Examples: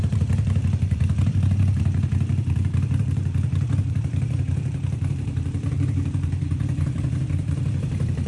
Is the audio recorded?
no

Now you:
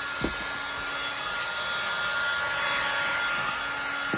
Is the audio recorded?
yes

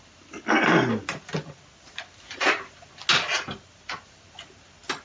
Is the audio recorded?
yes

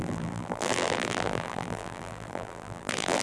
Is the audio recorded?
no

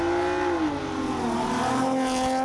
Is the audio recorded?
yes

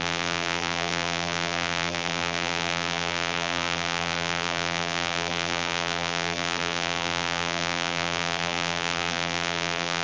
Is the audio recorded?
no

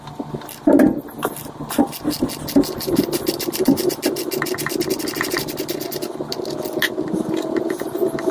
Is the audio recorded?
yes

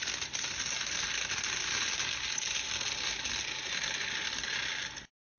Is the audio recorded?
yes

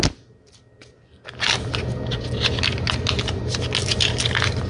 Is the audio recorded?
yes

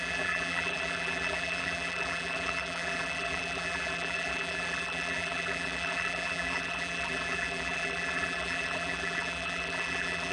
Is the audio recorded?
no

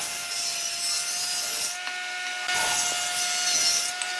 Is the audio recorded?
yes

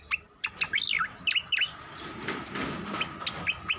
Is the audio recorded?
yes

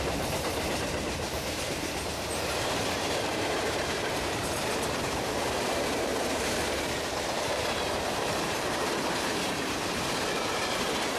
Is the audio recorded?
no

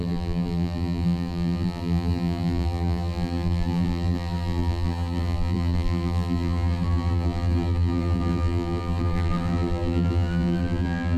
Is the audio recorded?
no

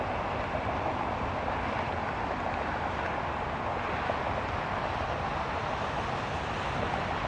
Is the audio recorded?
yes